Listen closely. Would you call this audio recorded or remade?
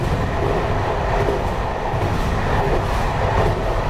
recorded